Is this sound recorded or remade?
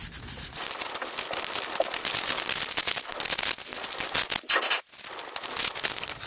recorded